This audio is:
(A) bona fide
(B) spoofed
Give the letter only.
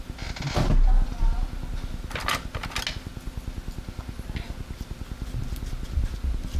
A